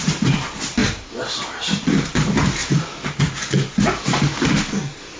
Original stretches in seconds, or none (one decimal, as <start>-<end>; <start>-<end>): 0.0-0.8; 1.8-5.2